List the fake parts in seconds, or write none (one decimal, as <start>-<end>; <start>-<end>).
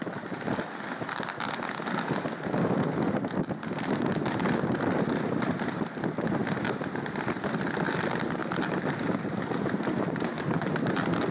none